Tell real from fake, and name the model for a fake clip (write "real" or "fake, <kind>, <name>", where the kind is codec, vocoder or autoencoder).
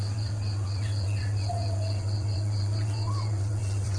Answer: fake, vocoder, WaveNeXt